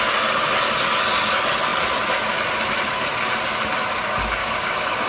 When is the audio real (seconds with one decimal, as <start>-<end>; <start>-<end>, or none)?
0.0-4.4